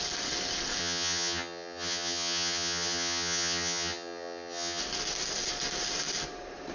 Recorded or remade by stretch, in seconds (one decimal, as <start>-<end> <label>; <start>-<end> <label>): 0.0-0.8 recorded; 0.8-4.8 remade; 4.8-6.7 recorded